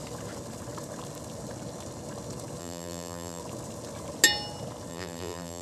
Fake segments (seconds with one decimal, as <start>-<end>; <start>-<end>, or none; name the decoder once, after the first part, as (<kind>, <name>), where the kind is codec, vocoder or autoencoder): 2.6-3.4 (vocoder, BigVGAN v2); 4.9-5.6

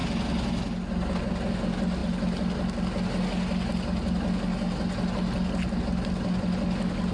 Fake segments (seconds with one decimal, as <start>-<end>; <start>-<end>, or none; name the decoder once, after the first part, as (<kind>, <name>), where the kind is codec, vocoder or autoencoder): none

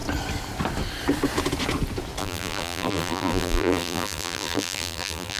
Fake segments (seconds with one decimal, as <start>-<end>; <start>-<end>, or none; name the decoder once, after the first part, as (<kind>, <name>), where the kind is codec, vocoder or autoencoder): 2.2-5.4 (vocoder, BigVGAN v2)

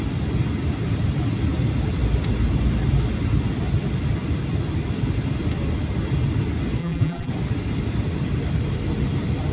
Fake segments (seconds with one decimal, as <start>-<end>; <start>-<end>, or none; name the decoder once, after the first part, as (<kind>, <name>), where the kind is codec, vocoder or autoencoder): 6.8-7.3 (vocoder, BigVGAN v2)

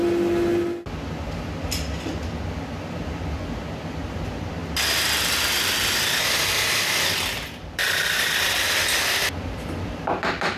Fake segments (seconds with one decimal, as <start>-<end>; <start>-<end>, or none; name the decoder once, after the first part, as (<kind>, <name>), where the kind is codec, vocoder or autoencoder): 4.1-4.6 (vocoder, BigVGAN v2); 6.7-10.6

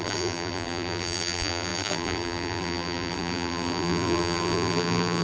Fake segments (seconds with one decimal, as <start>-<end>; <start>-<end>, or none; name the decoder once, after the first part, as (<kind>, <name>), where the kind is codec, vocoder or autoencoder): 0.0-5.2 (vocoder, BigVGAN v2)

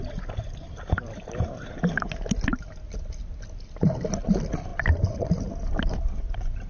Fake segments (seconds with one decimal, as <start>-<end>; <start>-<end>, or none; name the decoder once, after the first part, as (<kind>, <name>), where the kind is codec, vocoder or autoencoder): none